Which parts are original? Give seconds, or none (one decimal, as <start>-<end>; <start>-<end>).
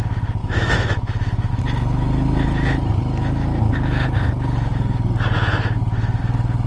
0.0-0.4; 1.5-6.7